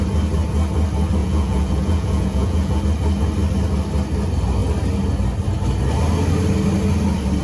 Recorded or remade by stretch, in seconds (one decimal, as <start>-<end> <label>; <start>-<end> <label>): 0.0-1.2 recorded; 1.2-2.8 remade; 2.8-7.4 recorded